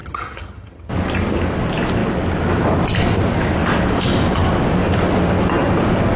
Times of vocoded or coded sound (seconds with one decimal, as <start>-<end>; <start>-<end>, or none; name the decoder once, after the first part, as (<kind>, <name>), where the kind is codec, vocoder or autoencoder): 0.0-0.9 (vocoder, HiFi-GAN)